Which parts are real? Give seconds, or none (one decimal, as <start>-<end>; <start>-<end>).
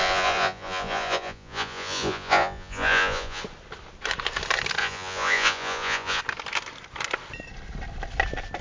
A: 3.4-4.8; 6.2-8.6